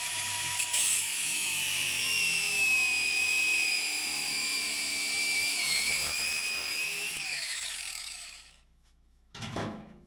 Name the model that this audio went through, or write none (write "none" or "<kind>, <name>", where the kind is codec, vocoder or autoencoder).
autoencoder, DAC-VAE